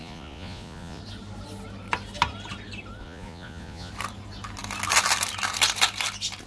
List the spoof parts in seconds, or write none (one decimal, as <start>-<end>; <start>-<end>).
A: 0.0-1.0; 3.0-3.9